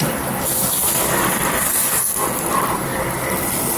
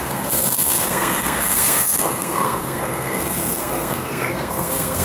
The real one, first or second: first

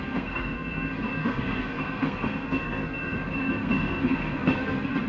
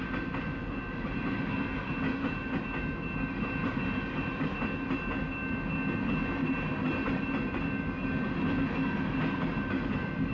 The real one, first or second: second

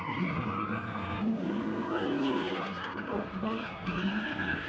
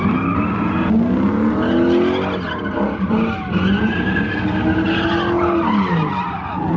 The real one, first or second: second